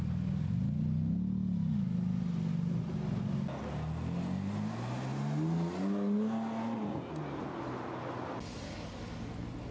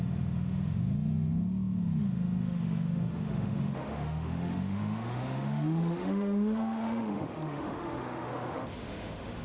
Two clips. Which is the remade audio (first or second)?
second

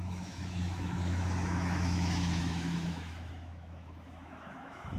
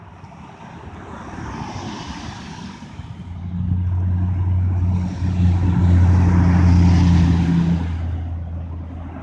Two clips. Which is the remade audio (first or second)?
first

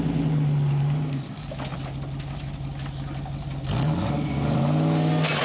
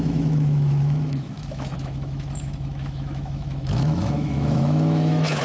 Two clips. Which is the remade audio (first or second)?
second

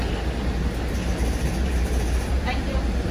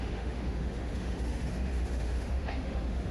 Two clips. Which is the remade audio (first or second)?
second